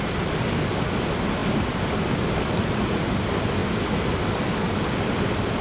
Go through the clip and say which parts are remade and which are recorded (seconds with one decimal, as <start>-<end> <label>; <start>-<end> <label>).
0.0-5.6 recorded